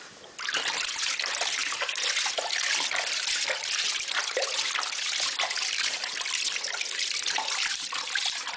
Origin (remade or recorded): remade